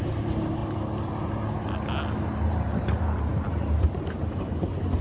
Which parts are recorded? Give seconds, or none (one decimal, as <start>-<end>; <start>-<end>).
0.0-5.0